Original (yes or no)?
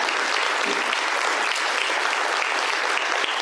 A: yes